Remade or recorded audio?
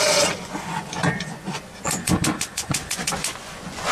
remade